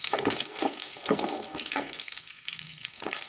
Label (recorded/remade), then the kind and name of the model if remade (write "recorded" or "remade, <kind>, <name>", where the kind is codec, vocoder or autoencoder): remade, codec, SNAC